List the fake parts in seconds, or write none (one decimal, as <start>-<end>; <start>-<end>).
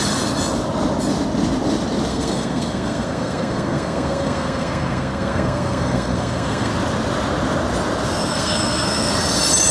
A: 2.1-6.7; 8.3-9.1